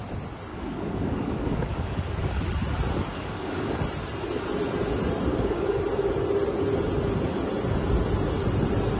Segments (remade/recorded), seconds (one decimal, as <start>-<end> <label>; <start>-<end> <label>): 0.0-0.5 recorded; 0.5-2.4 remade; 2.4-3.1 recorded; 3.1-3.8 remade; 3.8-5.3 recorded; 5.3-5.8 remade; 5.8-9.0 recorded